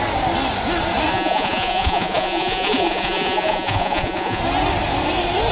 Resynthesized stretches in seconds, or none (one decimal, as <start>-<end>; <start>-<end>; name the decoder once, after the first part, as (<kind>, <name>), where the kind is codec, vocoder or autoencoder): 1.1-4.4 (vocoder, Vocos)